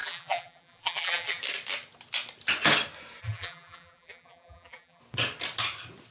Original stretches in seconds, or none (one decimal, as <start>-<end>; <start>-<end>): 1.4-3.2; 5.0-6.1